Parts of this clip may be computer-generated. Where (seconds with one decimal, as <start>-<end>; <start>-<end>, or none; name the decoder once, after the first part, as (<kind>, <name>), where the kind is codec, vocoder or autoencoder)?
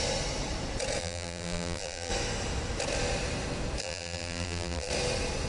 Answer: 1.0-2.1 (vocoder, BigVGAN v2); 3.8-4.9